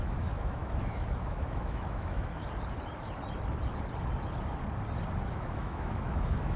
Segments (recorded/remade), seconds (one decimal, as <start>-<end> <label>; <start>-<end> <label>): 0.0-2.4 remade; 2.4-5.3 recorded; 5.3-6.6 remade